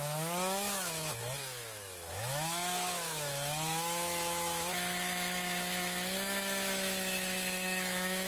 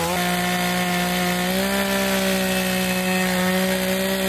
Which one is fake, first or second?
first